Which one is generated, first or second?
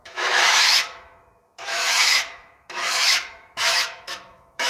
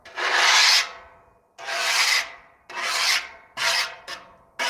first